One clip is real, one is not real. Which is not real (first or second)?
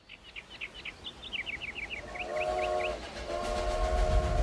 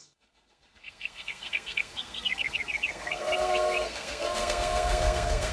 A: second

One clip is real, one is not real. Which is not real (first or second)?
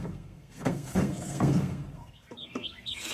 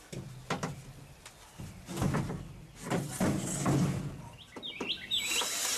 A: first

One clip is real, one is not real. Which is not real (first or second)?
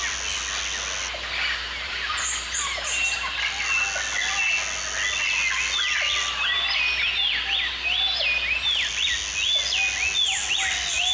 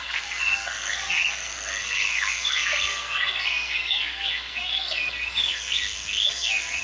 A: second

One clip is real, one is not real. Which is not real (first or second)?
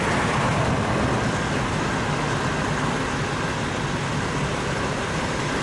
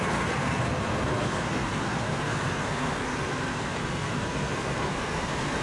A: second